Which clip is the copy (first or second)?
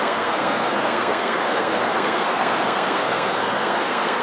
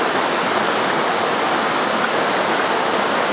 first